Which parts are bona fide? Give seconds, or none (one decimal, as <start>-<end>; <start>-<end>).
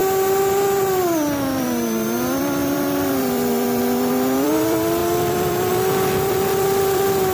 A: 0.0-0.8